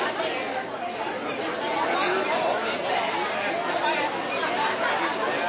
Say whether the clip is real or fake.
real